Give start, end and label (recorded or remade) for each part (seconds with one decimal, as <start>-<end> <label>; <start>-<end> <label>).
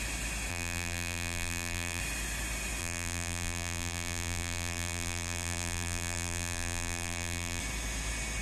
0.0-0.5 recorded; 0.5-2.0 remade; 2.0-2.8 recorded; 2.8-7.6 remade; 7.6-8.4 recorded